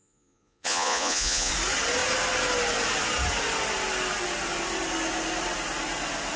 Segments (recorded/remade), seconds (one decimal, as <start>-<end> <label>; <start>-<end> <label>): 0.0-1.5 remade; 1.5-6.4 recorded